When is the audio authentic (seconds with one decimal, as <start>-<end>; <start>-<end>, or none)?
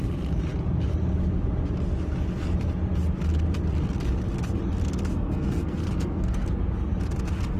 0.0-5.1; 6.5-7.6